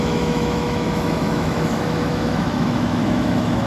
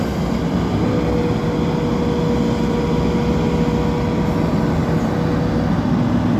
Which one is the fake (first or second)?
first